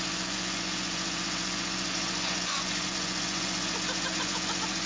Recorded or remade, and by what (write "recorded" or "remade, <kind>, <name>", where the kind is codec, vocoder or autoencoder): remade, vocoder, Vocos